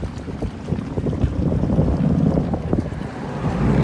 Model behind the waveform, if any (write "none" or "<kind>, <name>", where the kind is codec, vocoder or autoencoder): none